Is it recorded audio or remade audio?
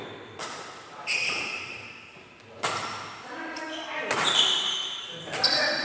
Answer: recorded